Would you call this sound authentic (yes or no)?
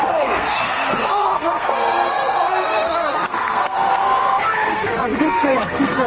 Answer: no